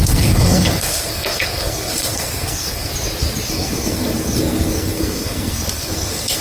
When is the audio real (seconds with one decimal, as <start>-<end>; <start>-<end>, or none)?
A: 2.9-3.5